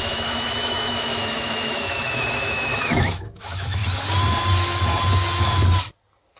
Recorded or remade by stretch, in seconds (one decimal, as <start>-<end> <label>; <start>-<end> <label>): 0.0-3.8 remade; 3.8-6.4 recorded